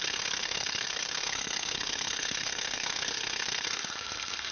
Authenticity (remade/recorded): remade